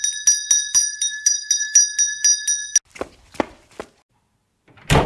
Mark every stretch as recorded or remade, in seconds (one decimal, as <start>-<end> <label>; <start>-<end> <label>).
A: 0.0-0.9 recorded; 0.9-1.8 remade; 1.8-5.1 recorded